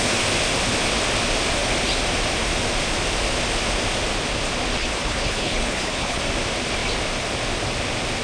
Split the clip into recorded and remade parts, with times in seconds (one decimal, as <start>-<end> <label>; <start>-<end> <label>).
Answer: 0.0-4.8 recorded; 4.8-6.2 remade; 6.2-8.2 recorded